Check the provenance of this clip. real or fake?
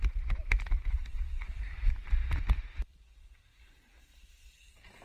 fake